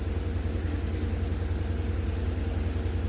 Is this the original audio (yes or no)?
yes